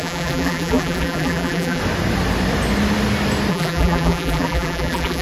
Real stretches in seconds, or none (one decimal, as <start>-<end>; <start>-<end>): 1.8-3.5

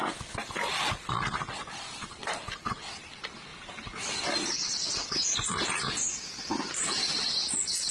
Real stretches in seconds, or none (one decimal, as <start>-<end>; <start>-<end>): 2.7-7.9

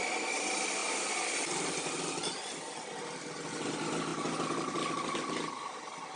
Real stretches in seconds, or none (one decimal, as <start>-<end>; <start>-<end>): 0.0-0.8; 2.4-6.2

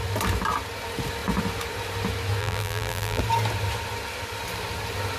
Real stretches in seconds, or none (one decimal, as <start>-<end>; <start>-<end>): 0.0-2.4; 3.2-5.2

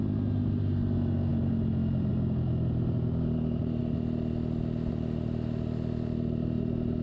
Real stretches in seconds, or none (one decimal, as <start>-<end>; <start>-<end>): 0.0-1.3; 2.1-7.0

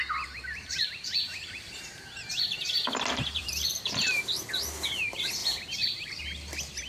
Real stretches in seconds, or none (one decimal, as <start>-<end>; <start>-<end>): 0.0-0.5; 2.8-3.4; 4.1-5.4; 6.2-6.9

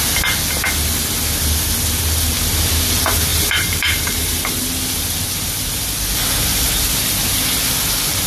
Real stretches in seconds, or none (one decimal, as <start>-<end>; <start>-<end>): 0.0-3.3; 4.5-8.3

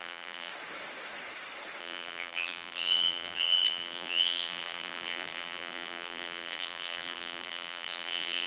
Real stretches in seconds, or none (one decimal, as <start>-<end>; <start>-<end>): 0.5-1.8